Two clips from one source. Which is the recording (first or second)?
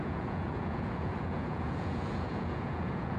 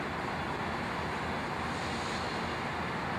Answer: second